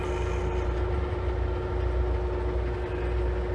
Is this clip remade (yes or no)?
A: no